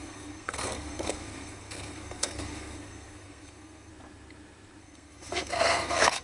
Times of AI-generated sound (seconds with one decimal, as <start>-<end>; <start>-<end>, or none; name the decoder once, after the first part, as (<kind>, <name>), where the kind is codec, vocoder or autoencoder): 0.0-3.9 (codec, SNAC); 4.8-6.2